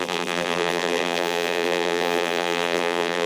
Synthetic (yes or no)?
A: yes